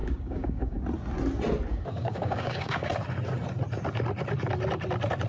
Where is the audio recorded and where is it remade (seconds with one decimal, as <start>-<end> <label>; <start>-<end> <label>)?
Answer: 0.0-0.8 remade; 0.8-1.7 recorded; 1.7-2.9 remade; 2.9-5.3 recorded